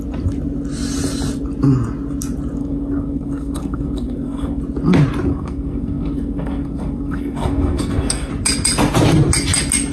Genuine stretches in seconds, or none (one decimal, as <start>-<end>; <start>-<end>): 0.0-2.6; 4.6-5.3; 8.3-9.9